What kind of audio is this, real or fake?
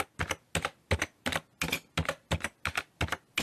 real